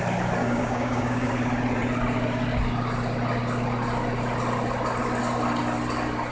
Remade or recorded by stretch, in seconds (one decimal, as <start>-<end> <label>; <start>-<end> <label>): 0.0-0.4 recorded; 0.4-1.3 remade; 1.3-6.3 recorded